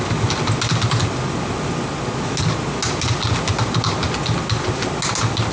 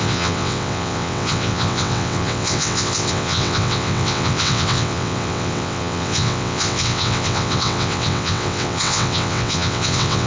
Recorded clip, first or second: first